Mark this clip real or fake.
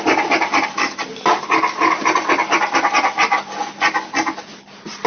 real